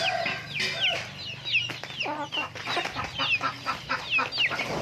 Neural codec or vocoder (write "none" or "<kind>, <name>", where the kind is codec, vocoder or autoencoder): none